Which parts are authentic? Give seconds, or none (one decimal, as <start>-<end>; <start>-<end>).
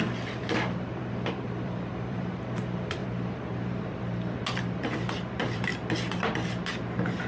5.7-7.3